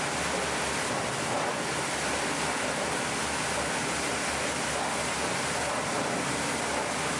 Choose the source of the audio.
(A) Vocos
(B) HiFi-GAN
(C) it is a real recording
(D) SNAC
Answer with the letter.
C